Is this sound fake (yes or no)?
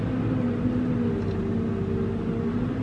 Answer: no